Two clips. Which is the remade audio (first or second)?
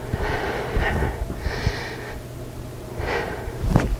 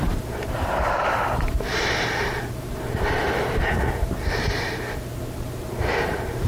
second